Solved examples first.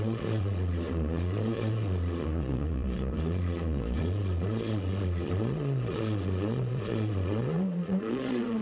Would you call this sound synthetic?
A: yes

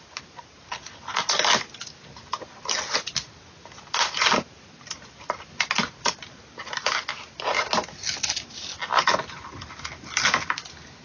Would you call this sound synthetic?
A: no